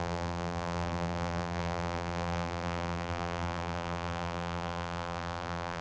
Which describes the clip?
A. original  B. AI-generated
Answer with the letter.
B